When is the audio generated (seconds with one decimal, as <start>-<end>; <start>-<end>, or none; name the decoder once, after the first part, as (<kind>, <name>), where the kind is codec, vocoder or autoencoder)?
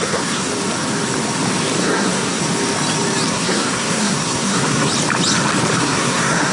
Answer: 0.0-0.5 (codec, SNAC); 1.8-2.4; 3.3-4.9; 5.8-6.5